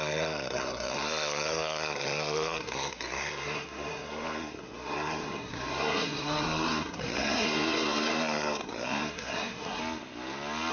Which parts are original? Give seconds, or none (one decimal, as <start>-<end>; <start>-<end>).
9.8-10.7